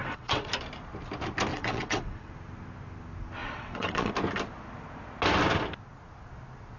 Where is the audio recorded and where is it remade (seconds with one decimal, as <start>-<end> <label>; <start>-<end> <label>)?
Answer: 0.0-0.5 remade; 0.5-1.5 recorded; 1.5-2.3 remade; 2.3-3.4 recorded; 3.4-4.1 remade; 4.1-6.8 recorded